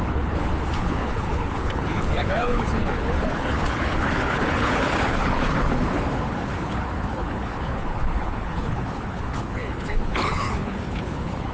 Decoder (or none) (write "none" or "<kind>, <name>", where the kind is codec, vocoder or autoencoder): codec, HILCodec